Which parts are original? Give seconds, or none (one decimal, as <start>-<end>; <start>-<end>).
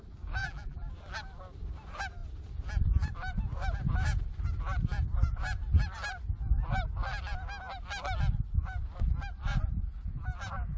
0.0-0.4; 0.9-10.8